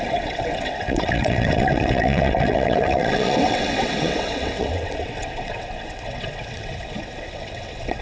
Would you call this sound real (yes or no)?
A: no